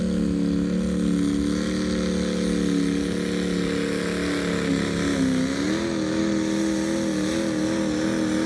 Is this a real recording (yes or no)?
yes